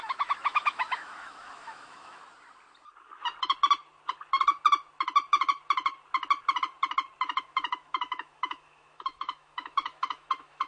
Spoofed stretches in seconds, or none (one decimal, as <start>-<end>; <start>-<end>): 0.0-2.2; 7.4-10.7